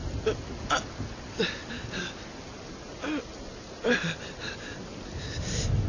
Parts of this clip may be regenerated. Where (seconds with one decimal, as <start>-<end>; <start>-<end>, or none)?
none